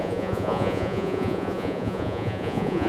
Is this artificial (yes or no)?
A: yes